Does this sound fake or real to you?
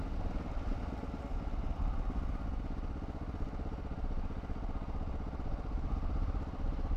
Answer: real